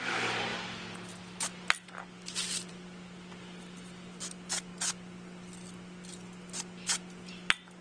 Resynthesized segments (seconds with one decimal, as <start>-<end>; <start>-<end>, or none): none